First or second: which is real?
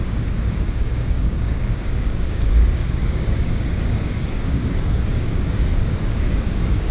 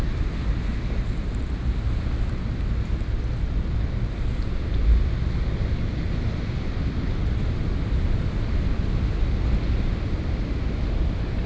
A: second